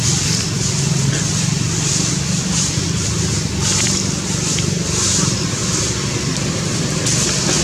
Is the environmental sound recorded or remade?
recorded